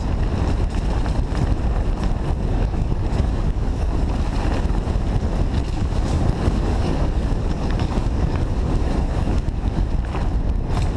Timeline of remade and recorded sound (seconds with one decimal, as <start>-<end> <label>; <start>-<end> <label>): 0.0-2.5 recorded; 2.5-4.0 remade; 4.0-5.6 recorded; 5.6-9.9 remade; 9.9-11.0 recorded